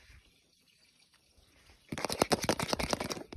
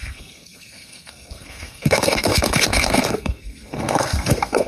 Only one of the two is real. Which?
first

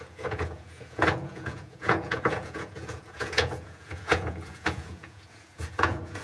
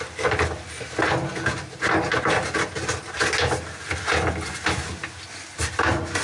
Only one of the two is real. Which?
second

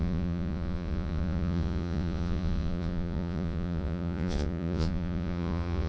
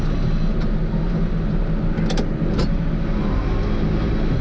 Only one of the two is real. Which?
second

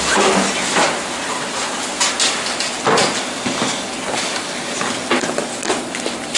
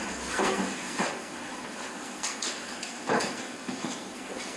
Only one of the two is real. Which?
first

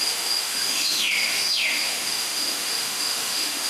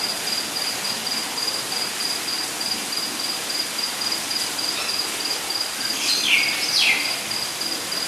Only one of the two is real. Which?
second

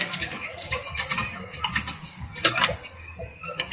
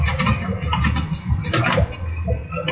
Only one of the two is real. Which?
second